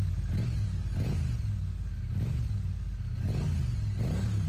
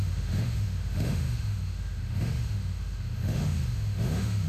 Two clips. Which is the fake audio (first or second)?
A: second